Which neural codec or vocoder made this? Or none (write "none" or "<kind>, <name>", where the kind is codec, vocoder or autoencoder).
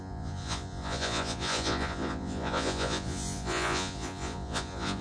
vocoder, Vocos